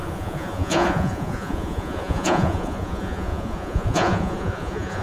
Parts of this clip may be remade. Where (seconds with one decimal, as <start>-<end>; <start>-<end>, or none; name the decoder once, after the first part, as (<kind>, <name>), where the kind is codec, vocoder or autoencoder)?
0.0-5.0 (vocoder, Vocos)